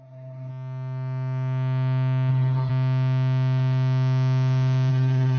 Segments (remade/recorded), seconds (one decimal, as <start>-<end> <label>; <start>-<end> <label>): 0.0-0.5 remade; 0.5-2.3 recorded; 2.3-2.7 remade; 2.7-4.9 recorded; 4.9-5.4 remade